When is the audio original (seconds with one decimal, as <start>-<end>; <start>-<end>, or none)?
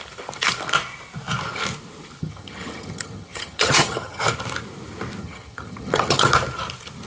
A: 0.0-2.2; 4.2-5.2; 6.3-7.1